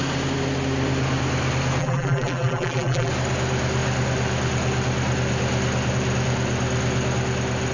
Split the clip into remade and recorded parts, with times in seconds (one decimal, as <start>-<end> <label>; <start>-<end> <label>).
0.0-1.8 recorded; 1.8-3.1 remade; 3.1-7.7 recorded